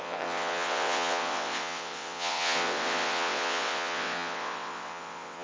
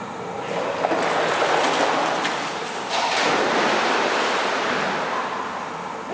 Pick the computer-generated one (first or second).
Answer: first